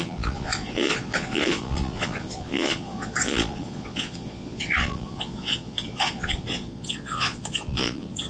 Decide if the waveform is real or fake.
fake